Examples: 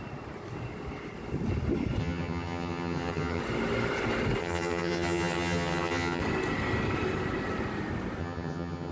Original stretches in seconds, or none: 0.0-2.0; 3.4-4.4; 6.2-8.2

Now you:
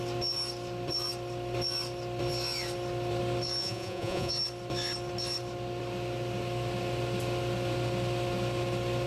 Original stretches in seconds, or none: 0.0-3.6; 4.3-9.1

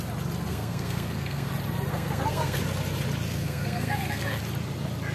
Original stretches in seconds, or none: 0.0-0.5; 1.5-1.9; 2.6-3.3; 4.4-5.1

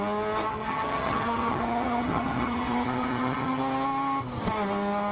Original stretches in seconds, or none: 0.0-0.5; 3.6-5.1

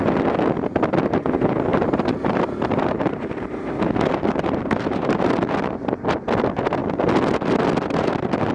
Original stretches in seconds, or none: 0.0-1.7; 5.2-8.5

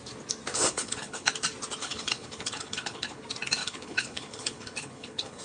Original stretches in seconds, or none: 0.0-0.5; 1.3-1.8; 3.2-3.6

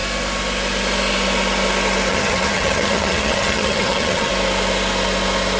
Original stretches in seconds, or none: 0.0-2.1; 4.3-5.6